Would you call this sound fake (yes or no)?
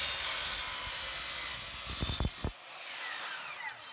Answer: no